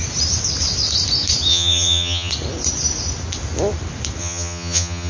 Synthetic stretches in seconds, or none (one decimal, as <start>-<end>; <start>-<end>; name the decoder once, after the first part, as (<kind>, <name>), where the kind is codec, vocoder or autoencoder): 1.5-2.3 (vocoder, HiFi-GAN); 4.2-5.1